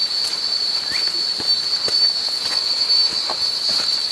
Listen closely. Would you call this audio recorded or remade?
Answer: recorded